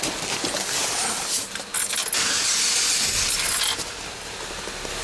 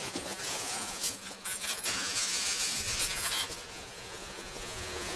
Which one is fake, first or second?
second